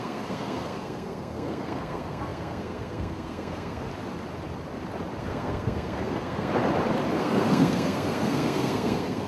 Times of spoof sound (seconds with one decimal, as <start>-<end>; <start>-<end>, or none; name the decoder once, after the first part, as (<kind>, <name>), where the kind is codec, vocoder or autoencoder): 0.0-3.9 (codec, SNAC); 5.2-6.5; 7.2-9.3